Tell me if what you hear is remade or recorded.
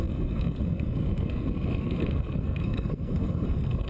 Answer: remade